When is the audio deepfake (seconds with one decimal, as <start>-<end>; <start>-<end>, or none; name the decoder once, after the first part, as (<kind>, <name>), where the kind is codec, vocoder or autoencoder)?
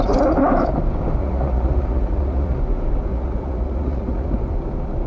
1.2-2.6 (vocoder, Vocos); 3.1-4.3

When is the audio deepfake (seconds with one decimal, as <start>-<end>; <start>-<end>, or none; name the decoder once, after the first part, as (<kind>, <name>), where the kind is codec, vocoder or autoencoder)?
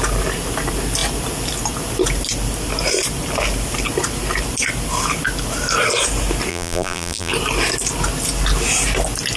6.5-7.3 (vocoder, BigVGAN v2)